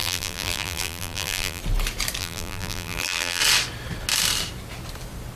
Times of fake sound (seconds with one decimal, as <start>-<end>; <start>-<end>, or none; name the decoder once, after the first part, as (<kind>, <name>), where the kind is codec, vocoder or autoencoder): 0.0-1.6 (vocoder, BigVGAN v2); 2.2-3.4